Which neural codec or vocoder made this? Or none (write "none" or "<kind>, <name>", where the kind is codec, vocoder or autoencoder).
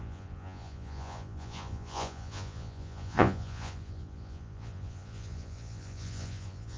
vocoder, Vocos